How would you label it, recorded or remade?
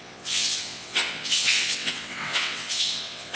remade